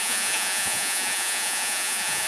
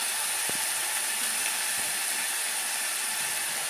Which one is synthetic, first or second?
first